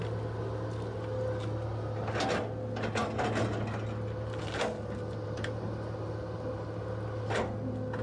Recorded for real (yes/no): yes